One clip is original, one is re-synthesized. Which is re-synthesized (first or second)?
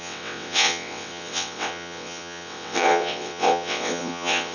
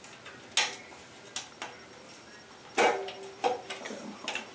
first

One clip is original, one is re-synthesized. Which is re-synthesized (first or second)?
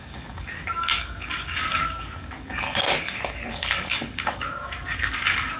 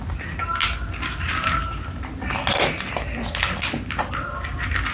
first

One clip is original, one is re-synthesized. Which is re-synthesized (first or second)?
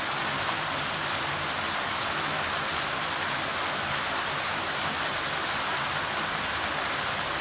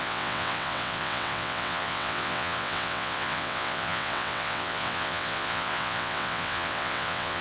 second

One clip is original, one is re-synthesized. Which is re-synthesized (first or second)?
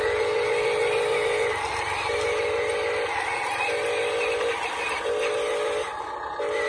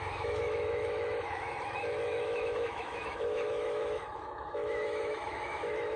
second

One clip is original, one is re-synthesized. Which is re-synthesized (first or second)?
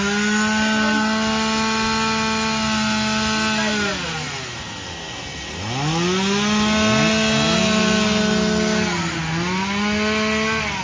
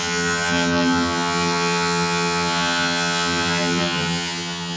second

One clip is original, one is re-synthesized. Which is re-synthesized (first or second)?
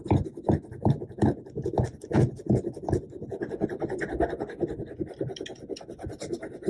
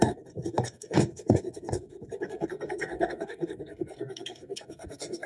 second